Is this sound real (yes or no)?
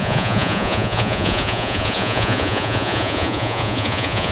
no